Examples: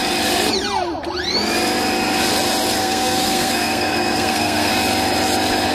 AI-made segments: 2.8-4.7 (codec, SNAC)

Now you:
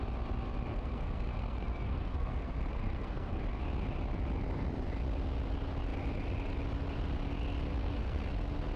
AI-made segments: 0.7-3.4 (codec, SNAC); 7.8-8.3

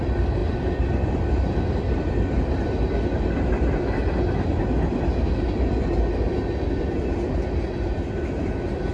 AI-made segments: none

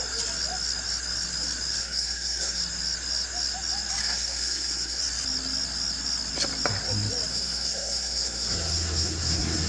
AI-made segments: 1.8-2.6 (codec, SNAC); 4.0-5.0; 7.3-9.7

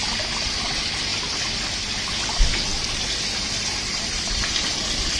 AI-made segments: none

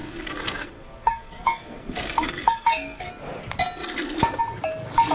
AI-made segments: 0.0-3.1 (codec, SNAC)

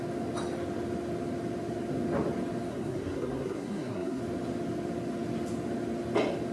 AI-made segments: 2.7-4.2 (codec, SNAC)